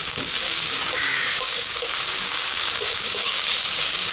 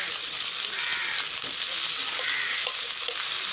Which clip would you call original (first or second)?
second